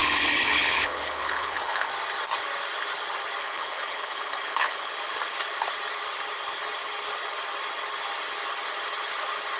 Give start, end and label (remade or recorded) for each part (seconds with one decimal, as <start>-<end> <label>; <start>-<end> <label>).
0.0-1.9 remade; 1.9-3.4 recorded; 3.4-4.9 remade; 4.9-9.6 recorded